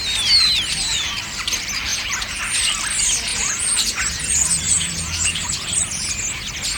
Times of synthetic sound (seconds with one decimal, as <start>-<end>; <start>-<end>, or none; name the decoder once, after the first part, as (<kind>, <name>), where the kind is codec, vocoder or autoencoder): 1.9-2.4 (vocoder, Vocos); 3.3-6.1